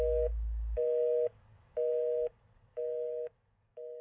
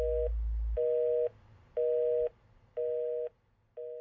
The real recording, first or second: second